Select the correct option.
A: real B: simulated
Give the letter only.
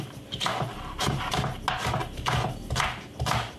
A